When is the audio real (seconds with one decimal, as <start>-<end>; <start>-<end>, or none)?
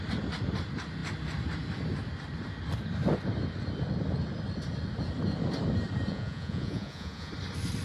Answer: 0.0-6.1; 7.3-7.8